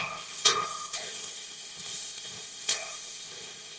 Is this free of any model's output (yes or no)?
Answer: no